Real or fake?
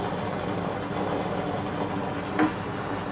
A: real